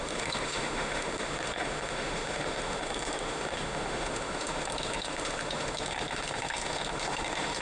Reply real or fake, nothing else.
fake